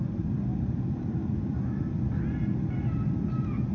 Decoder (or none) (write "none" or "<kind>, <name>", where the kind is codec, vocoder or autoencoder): none